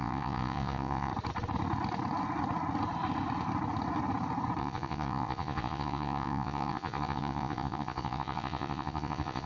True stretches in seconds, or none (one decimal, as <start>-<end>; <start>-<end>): 1.1-4.6